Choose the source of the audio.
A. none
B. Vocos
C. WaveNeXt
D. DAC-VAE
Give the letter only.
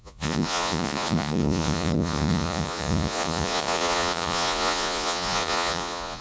B